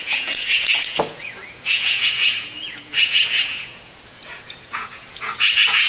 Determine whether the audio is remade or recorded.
remade